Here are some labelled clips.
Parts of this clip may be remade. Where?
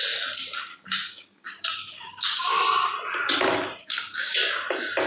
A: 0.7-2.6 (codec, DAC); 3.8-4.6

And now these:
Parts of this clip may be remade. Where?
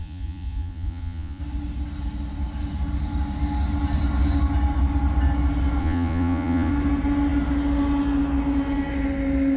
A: 0.0-1.4 (vocoder, Vocos); 5.8-6.7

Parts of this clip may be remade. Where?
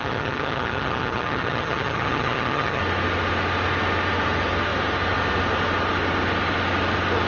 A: 0.0-2.8 (vocoder, HiFi-GAN)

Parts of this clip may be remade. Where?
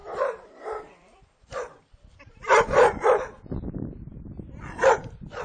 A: 0.0-3.2 (vocoder, BigVGAN v2); 4.1-5.4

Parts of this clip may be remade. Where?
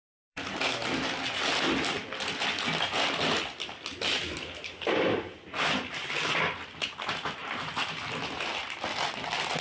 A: 0.0-0.6 (vocoder, BigVGAN v2); 7.4-8.0